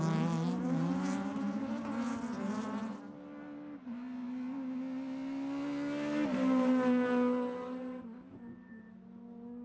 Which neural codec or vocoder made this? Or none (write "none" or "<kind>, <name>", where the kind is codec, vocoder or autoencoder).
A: none